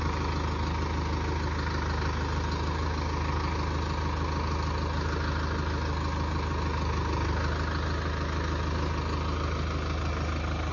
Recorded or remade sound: recorded